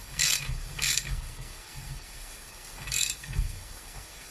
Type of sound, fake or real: fake